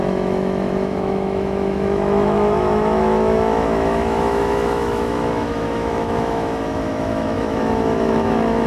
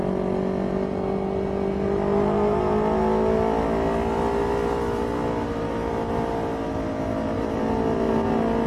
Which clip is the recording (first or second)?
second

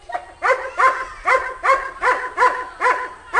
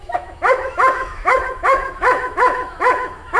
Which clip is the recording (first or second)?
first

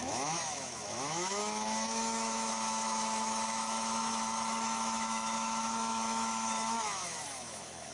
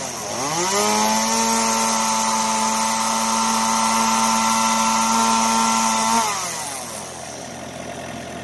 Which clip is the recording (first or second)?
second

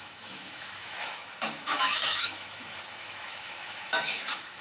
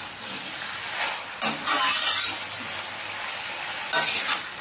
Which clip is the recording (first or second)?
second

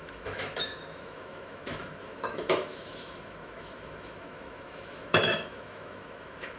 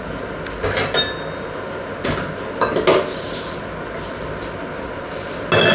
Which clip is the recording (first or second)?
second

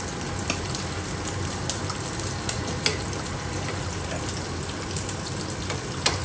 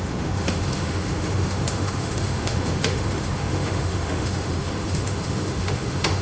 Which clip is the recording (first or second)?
first